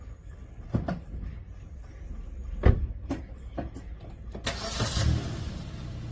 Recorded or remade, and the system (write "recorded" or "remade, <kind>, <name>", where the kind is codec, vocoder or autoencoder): recorded